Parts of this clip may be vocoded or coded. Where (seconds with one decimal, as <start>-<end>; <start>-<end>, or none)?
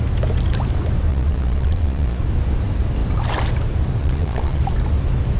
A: 1.1-2.2; 4.0-4.6